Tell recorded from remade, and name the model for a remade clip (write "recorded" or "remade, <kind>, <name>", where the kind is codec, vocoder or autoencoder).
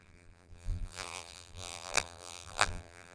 remade, vocoder, BigVGAN v2